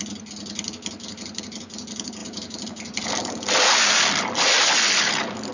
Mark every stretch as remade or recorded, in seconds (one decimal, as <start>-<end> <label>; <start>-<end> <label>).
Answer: 0.0-2.2 recorded; 2.2-3.1 remade; 3.1-5.5 recorded